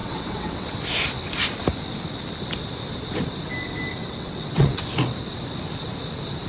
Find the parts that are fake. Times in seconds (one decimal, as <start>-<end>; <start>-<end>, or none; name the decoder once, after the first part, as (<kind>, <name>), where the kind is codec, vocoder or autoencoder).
0.0-0.8 (vocoder, WaveNeXt); 4.0-4.8